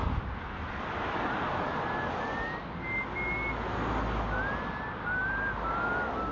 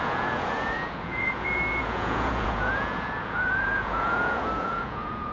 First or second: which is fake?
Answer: second